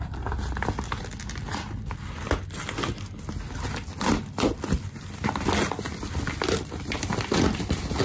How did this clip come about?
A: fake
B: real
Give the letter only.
B